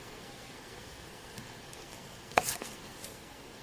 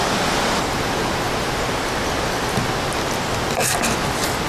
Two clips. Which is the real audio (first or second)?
second